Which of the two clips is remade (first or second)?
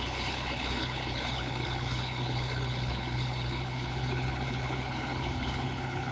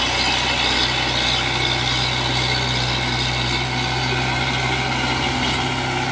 first